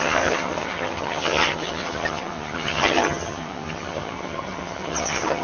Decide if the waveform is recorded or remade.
remade